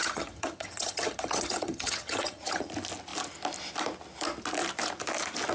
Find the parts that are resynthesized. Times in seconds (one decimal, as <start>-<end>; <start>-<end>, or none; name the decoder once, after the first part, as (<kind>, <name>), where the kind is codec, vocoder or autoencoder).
0.0-2.7 (vocoder, HiFi-GAN)